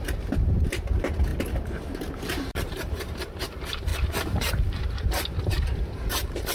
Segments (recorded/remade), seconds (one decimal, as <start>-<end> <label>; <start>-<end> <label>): 0.0-1.3 remade; 1.3-2.2 recorded; 2.2-6.5 remade